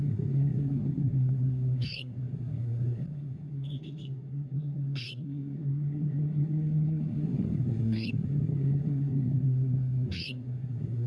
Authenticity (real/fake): fake